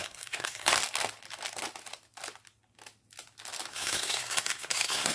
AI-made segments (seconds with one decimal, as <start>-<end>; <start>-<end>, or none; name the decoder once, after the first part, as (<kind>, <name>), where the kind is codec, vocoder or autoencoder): 0.0-0.7 (codec, SNAC); 3.7-5.1